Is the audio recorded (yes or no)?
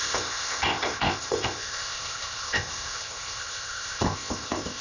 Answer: no